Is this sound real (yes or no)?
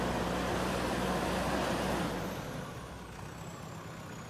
yes